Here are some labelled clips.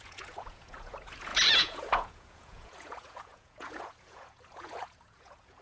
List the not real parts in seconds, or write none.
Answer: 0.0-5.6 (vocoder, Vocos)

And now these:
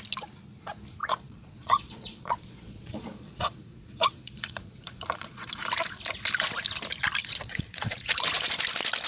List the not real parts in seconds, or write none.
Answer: 1.0-5.5 (vocoder, Vocos); 7.2-8.3

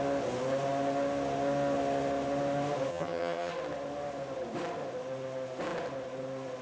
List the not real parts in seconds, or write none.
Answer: 2.9-3.5 (vocoder, HiFi-GAN)